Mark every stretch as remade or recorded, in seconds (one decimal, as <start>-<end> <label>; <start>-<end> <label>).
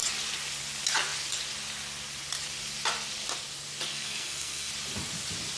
0.0-3.9 recorded; 3.9-4.7 remade; 4.7-5.6 recorded